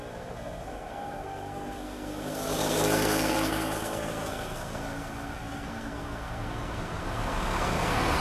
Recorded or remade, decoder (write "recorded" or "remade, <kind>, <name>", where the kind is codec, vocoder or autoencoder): remade, codec, SNAC